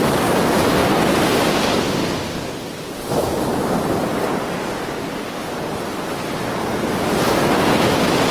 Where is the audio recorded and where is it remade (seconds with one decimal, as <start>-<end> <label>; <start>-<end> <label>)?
0.0-8.3 recorded